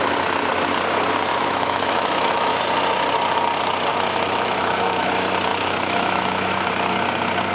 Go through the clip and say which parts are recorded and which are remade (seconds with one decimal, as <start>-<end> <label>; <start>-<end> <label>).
0.0-1.3 recorded; 1.3-2.6 remade; 2.6-3.9 recorded; 3.9-5.1 remade; 5.1-5.5 recorded; 5.5-6.7 remade; 6.7-7.5 recorded